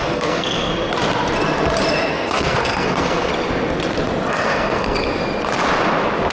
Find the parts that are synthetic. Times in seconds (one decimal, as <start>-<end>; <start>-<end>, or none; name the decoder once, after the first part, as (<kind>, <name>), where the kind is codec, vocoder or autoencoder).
0.0-0.7 (codec, SNAC); 2.1-3.3; 4.3-5.2

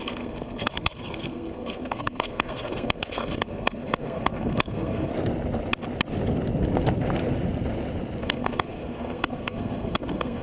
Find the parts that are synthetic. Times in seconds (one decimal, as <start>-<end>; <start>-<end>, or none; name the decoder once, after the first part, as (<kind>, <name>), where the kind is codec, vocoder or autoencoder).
0.0-5.1 (codec, SNAC); 8.2-10.4

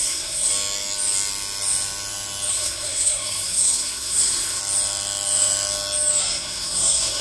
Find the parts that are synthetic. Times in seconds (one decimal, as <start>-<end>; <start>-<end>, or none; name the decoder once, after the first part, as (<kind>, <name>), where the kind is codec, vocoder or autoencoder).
0.0-0.5 (codec, SNAC); 2.5-4.6; 6.2-7.2

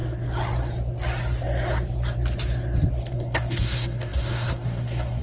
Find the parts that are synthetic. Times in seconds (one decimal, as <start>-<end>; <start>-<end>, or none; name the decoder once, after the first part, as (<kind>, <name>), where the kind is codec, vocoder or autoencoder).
3.1-5.2 (codec, SNAC)

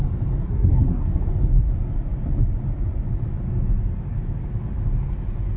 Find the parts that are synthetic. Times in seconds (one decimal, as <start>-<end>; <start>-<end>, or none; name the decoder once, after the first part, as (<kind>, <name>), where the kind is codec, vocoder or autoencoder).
0.4-1.3 (codec, SNAC)